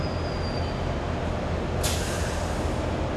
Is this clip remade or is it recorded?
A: recorded